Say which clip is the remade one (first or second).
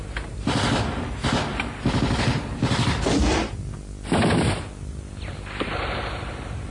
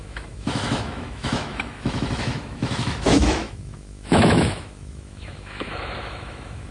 second